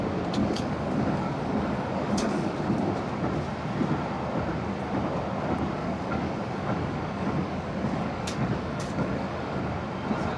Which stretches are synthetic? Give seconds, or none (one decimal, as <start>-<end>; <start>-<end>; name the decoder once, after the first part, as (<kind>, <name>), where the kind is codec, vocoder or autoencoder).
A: 0.4-2.9 (codec, DAC); 5.8-9.6